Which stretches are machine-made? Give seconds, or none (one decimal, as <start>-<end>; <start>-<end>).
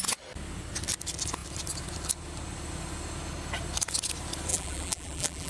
4.5-5.5